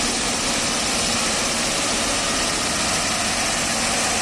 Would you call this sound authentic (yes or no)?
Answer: yes